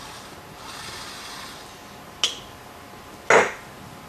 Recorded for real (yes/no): yes